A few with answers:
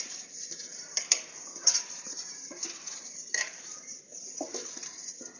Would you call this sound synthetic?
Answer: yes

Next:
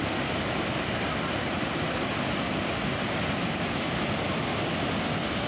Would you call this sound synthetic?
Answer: no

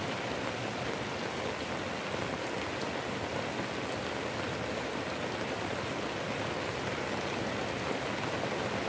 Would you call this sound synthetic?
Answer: no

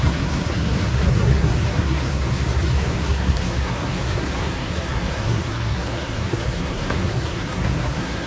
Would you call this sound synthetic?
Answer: yes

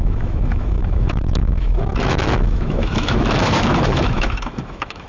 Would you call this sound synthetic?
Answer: yes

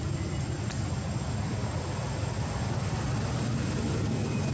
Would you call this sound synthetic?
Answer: no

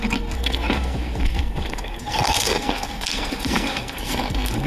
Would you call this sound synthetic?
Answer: yes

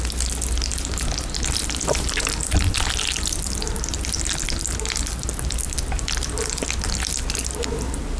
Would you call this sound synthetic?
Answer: no